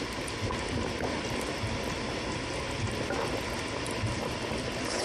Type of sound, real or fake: real